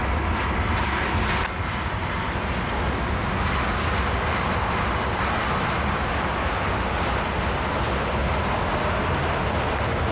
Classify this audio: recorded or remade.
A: recorded